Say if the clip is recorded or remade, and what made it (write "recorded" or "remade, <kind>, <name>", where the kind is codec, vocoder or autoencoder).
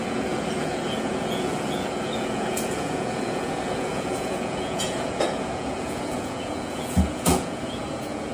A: remade, vocoder, Vocos